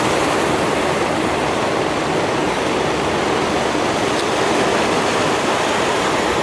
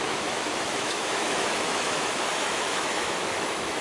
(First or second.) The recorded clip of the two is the first